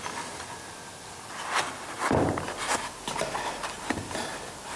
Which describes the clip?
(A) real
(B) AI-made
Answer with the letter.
A